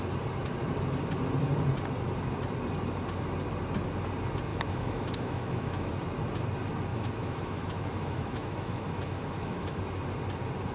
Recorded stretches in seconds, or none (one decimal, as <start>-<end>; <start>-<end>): 0.0-4.5; 5.9-6.9; 9.8-10.7